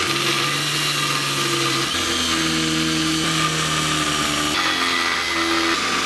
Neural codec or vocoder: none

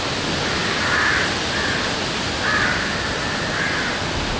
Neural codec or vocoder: none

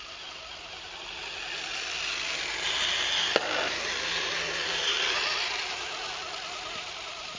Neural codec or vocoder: none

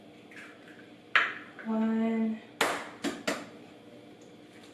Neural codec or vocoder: none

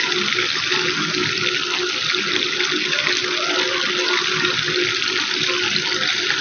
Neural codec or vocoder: none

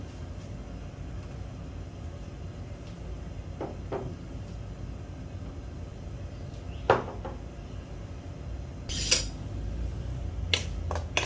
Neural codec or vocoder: none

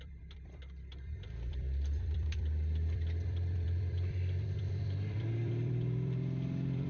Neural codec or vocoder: vocoder, BigVGAN v2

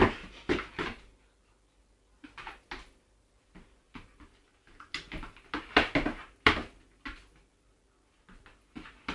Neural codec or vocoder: none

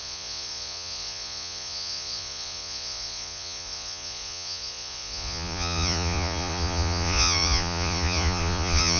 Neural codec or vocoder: vocoder, Vocos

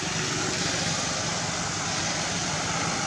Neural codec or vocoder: none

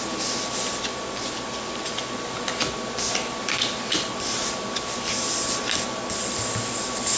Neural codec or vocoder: none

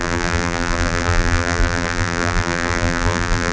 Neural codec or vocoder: vocoder, BigVGAN v2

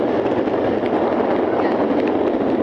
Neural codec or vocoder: none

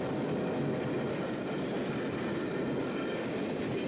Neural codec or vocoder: none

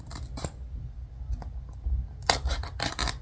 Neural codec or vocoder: none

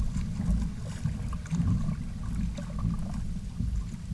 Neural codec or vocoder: none